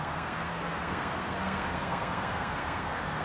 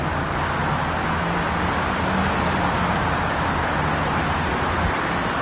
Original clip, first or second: second